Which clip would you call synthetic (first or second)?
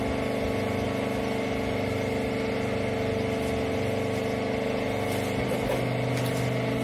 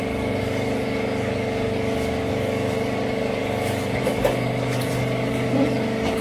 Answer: second